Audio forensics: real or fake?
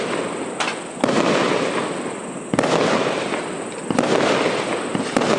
real